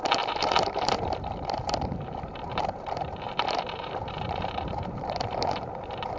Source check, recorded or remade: remade